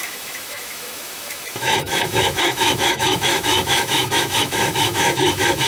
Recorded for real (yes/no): no